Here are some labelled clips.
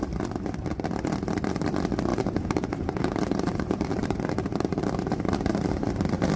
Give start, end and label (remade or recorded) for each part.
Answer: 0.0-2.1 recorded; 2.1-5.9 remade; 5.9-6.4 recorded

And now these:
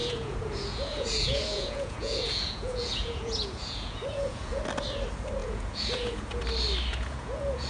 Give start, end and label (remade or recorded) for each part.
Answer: 0.0-4.6 remade; 4.6-5.4 recorded; 5.4-6.4 remade; 6.4-6.9 recorded; 6.9-7.7 remade

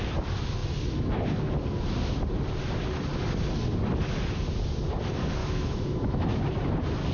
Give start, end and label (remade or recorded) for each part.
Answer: 0.0-5.4 recorded; 5.4-6.4 remade; 6.4-7.1 recorded

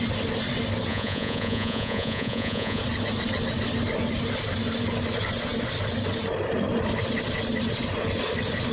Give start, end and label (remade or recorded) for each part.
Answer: 0.0-0.9 recorded; 0.9-2.8 remade; 2.8-8.7 recorded

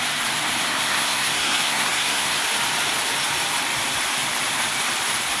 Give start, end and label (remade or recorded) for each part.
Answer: 0.0-0.6 recorded; 0.6-2.4 remade; 2.4-5.4 recorded